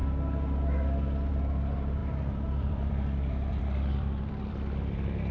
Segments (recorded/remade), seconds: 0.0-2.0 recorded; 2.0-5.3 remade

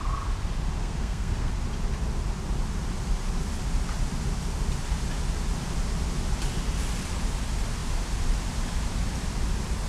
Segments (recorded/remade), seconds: 0.0-0.8 recorded; 0.8-1.5 remade; 1.5-9.9 recorded

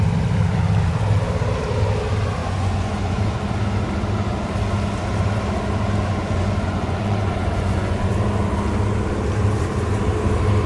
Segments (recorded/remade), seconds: 0.0-2.4 recorded; 2.4-3.4 remade; 3.4-6.1 recorded; 6.1-8.1 remade; 8.1-10.7 recorded

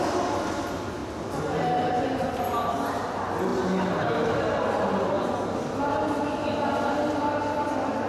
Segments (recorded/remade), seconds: 0.0-8.1 recorded

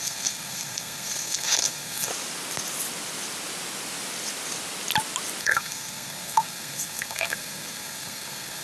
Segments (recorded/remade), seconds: 0.0-2.1 remade; 2.1-5.4 recorded; 5.4-8.6 remade